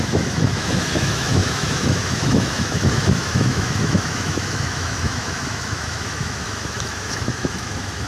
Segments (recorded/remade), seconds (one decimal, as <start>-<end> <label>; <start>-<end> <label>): 0.0-8.1 remade